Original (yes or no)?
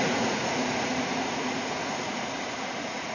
no